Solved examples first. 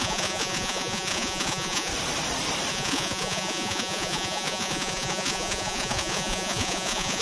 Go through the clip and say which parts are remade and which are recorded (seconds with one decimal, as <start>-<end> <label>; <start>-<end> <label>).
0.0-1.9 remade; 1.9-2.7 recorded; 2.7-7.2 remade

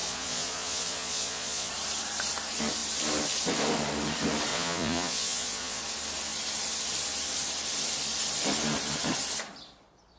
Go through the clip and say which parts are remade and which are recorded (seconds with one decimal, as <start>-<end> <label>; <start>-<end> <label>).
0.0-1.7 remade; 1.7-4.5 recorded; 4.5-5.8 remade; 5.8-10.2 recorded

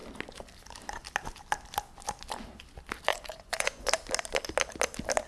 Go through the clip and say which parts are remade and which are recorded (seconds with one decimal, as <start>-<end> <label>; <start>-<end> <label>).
0.0-3.1 recorded; 3.1-3.9 remade; 3.9-5.3 recorded

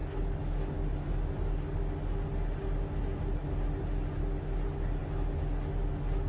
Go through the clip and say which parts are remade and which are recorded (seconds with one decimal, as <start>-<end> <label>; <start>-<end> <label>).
0.0-6.3 recorded